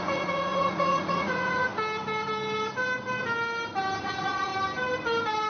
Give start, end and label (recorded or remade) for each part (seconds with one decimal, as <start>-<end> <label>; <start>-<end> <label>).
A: 0.0-1.7 remade; 1.7-4.0 recorded; 4.0-4.5 remade; 4.5-5.5 recorded